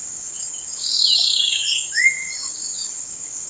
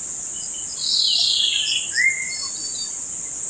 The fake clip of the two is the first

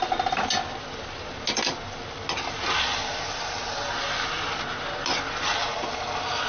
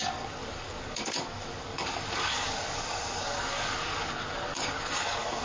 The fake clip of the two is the second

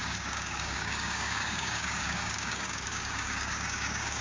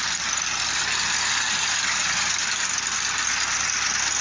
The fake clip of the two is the first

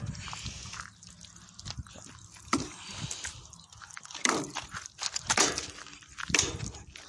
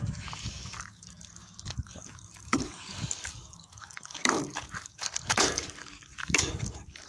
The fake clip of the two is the second